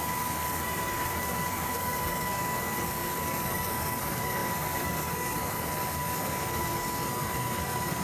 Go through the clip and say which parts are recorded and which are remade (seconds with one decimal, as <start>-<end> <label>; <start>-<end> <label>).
0.0-8.0 remade